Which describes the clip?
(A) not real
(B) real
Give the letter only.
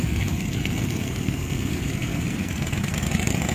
A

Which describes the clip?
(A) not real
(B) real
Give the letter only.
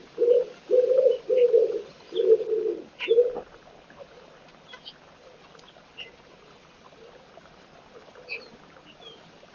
B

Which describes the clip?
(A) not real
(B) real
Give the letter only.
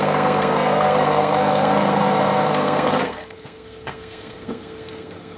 A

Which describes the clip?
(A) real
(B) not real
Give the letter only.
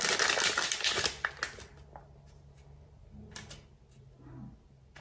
A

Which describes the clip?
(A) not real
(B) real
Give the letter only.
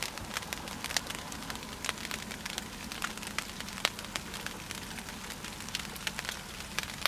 B